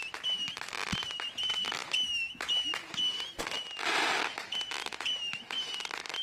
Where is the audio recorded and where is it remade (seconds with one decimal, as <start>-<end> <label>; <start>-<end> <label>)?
0.0-6.2 recorded